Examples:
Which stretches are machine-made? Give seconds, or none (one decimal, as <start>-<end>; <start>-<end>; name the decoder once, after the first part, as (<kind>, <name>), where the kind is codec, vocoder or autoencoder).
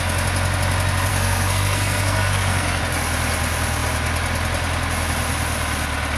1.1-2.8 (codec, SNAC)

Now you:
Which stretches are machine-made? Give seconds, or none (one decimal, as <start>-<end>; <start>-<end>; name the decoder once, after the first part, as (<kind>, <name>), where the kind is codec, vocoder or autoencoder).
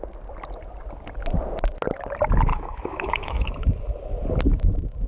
2.5-3.5 (autoencoder, DAC-VAE)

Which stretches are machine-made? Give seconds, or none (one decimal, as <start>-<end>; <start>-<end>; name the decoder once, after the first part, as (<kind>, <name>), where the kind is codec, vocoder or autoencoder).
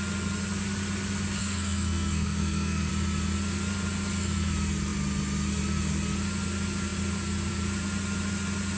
1.4-2.9 (codec, SNAC)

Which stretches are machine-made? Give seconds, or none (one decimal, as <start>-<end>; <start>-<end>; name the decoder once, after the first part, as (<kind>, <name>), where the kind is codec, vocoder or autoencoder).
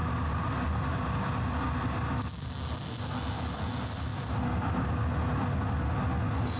none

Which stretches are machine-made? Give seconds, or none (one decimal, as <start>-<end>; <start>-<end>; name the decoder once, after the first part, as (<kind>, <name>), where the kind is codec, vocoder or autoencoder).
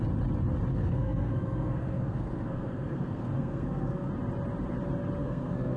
0.7-4.1 (codec, SNAC); 5.2-5.8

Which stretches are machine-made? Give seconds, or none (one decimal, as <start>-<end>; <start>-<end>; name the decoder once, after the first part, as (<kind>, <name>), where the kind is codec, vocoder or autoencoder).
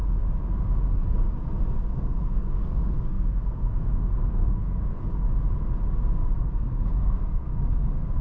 1.9-5.0 (codec, SNAC); 6.4-8.2